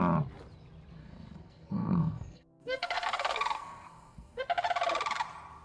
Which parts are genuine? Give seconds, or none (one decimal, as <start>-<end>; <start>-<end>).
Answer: 0.0-1.0; 4.4-5.6